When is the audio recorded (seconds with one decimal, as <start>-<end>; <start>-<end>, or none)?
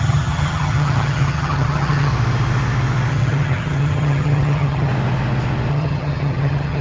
2.1-3.1; 4.9-5.7